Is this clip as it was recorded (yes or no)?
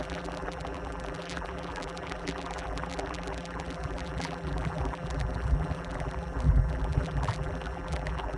no